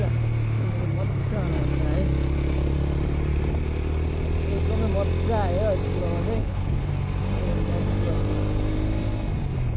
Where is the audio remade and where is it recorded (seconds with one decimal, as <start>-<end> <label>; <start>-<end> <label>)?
0.0-6.4 recorded; 6.4-6.9 remade; 6.9-9.8 recorded